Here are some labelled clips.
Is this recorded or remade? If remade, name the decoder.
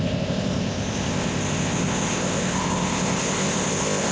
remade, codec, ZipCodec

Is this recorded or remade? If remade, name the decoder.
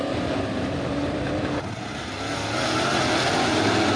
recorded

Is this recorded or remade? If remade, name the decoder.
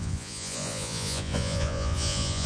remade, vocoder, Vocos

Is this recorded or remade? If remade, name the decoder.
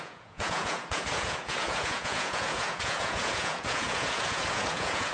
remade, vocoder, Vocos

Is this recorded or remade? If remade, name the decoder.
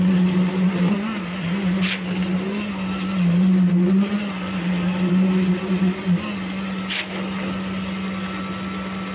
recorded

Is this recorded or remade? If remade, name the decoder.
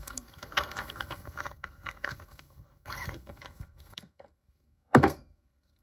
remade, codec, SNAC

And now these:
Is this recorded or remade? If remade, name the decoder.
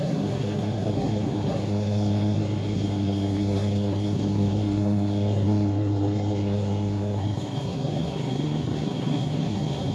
remade, codec, SNAC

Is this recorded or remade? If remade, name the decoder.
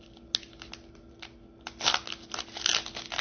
recorded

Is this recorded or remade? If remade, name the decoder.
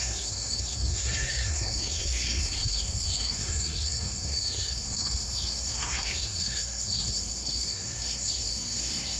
remade, codec, SNAC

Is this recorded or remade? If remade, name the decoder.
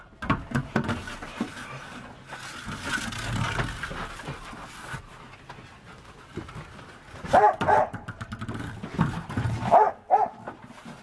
recorded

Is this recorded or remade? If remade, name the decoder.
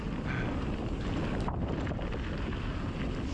recorded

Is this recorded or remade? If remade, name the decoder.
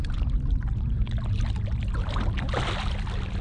recorded